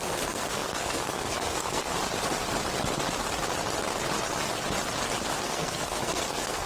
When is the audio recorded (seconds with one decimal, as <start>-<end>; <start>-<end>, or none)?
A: 1.9-5.4

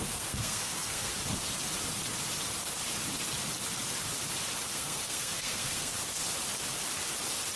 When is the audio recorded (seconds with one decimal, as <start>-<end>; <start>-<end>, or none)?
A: 1.1-4.7; 5.9-7.6

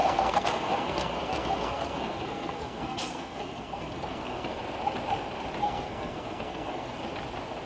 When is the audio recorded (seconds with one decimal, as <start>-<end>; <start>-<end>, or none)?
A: 4.6-5.6; 7.1-7.7

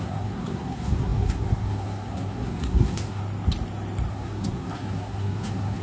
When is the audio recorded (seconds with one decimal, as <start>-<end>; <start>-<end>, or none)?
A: 3.2-4.1

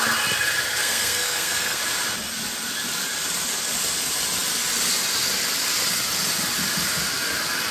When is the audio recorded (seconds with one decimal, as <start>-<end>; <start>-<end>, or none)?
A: 0.0-0.8; 1.8-7.7

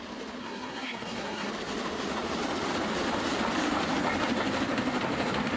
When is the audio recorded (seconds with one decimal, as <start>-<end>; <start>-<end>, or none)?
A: 0.0-0.4; 1.5-5.6